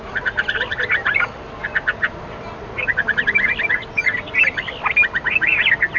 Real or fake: real